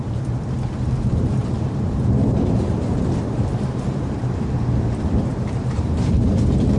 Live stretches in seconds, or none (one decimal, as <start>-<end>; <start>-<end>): 0.0-1.4; 4.2-5.3; 6.3-6.8